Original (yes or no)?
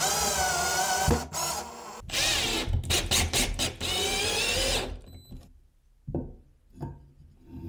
yes